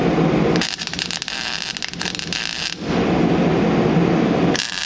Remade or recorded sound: recorded